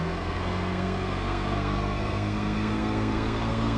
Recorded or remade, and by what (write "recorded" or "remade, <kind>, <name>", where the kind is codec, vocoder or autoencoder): remade, codec, SNAC